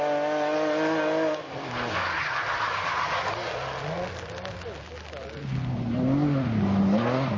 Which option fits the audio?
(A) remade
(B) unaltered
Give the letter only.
B